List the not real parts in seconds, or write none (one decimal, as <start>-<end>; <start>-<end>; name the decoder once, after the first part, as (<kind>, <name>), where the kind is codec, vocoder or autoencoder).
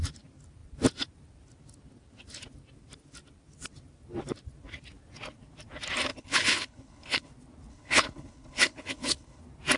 6.1-7.3 (codec, HILCodec); 7.7-9.4